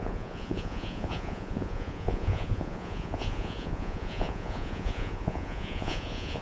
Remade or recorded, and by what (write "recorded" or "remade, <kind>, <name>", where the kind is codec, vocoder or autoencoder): remade, vocoder, Vocos